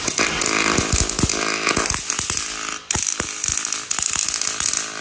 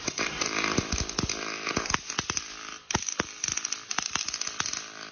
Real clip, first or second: first